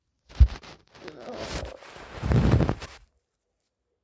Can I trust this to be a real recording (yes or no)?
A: no